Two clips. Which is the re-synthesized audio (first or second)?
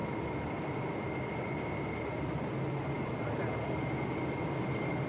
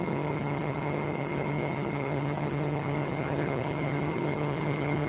second